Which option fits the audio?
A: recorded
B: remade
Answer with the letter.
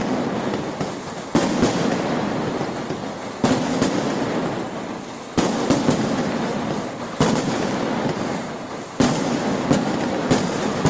A